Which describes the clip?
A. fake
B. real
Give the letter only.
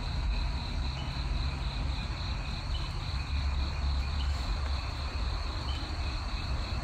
B